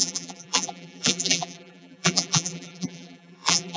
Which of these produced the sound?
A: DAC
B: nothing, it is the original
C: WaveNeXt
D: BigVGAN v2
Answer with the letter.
D